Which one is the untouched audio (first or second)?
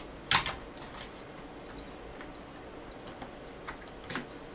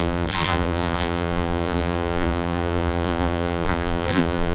first